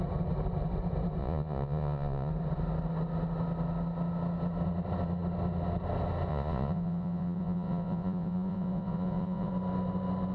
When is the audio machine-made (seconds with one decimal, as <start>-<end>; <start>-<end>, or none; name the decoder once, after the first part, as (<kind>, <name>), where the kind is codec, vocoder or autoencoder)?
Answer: 1.2-2.3 (vocoder, Vocos); 6.3-9.5

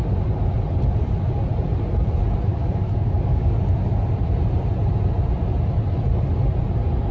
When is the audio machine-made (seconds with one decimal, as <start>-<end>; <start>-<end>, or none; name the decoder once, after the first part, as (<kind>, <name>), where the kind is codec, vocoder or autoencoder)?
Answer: 2.5-3.6 (codec, DAC)

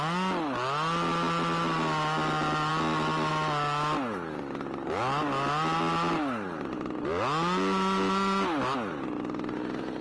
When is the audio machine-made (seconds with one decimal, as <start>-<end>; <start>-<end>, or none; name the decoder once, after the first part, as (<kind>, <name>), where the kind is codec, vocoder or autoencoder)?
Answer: none

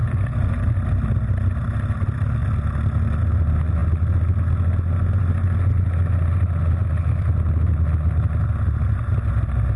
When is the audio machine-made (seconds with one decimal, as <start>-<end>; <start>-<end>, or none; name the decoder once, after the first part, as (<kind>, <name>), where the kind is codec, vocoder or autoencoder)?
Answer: 0.0-0.7 (vocoder, BigVGAN v2)